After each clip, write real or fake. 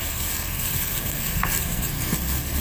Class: fake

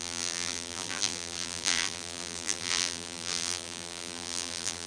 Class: fake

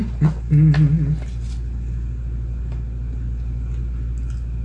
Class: real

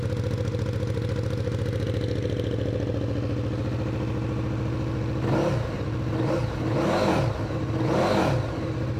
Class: real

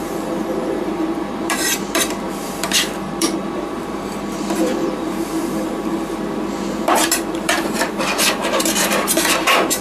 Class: fake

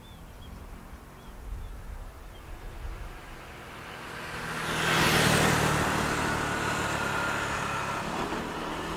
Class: real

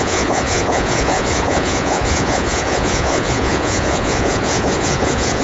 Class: fake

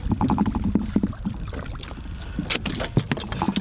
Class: real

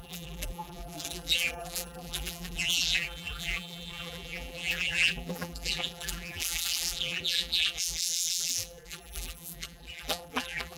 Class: fake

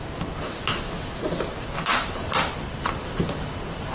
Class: real